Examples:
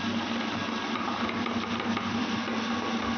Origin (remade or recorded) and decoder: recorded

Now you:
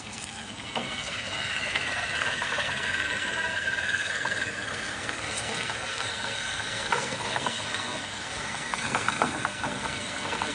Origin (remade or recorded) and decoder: remade, codec, SNAC